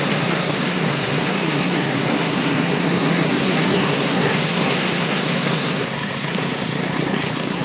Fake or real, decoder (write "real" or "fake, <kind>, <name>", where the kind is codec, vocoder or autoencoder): fake, codec, SNAC